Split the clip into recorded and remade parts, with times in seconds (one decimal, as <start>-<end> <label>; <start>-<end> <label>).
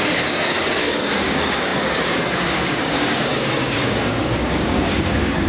0.0-5.5 remade